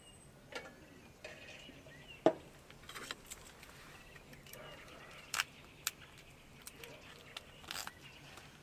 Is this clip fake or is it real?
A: real